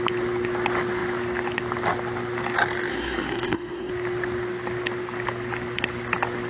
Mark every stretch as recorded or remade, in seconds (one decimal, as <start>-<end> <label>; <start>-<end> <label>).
0.0-2.9 recorded; 2.9-3.9 remade; 3.9-6.5 recorded

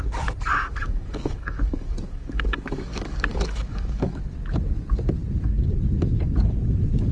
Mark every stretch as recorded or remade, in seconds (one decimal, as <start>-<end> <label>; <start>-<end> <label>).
0.0-0.5 recorded; 0.5-4.2 remade; 4.2-7.1 recorded

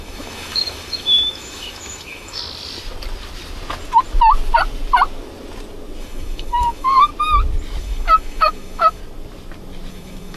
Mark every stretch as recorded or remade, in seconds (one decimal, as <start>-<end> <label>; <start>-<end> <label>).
0.0-2.4 remade; 2.4-6.0 recorded; 6.0-7.1 remade; 7.1-7.8 recorded; 7.8-9.0 remade; 9.0-9.9 recorded; 9.9-10.4 remade

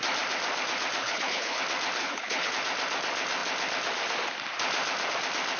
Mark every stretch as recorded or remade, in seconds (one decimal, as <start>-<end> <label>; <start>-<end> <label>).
0.0-1.0 recorded; 1.0-1.6 remade; 1.6-2.0 recorded; 2.0-2.5 remade; 2.5-5.6 recorded

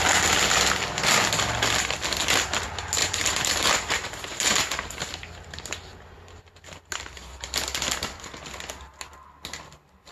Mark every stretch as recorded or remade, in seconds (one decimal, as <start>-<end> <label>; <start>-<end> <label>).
0.0-3.0 recorded; 3.0-4.9 remade; 4.9-10.1 recorded

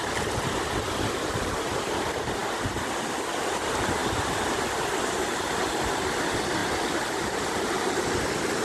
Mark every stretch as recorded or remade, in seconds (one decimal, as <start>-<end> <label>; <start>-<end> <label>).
0.0-6.6 recorded; 6.6-8.6 remade

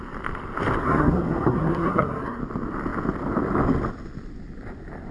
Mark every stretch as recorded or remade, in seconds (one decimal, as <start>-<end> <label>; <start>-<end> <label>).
0.0-0.8 recorded; 0.8-2.4 remade; 2.4-5.1 recorded

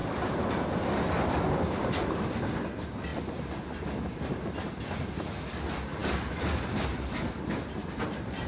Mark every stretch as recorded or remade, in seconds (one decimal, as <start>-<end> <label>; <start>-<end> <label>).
0.0-8.5 recorded